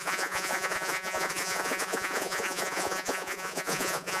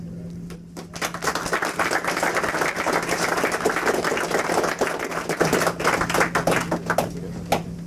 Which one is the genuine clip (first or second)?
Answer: second